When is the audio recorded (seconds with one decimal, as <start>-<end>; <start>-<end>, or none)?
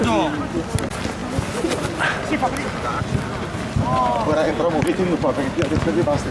0.0-6.3